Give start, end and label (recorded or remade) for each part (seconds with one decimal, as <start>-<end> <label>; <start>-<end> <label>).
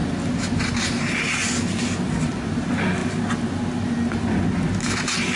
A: 0.0-5.4 recorded